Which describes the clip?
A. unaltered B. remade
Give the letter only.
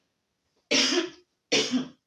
A